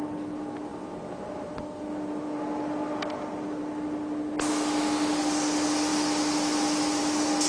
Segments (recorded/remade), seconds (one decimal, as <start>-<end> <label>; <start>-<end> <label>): 0.0-0.7 recorded; 0.7-1.6 remade; 1.6-7.5 recorded